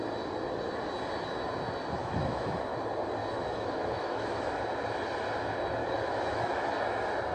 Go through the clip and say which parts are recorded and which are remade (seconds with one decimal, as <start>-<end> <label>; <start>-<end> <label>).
0.0-2.0 recorded; 2.0-2.8 remade; 2.8-3.2 recorded; 3.2-4.6 remade; 4.6-5.8 recorded; 5.8-6.7 remade; 6.7-7.3 recorded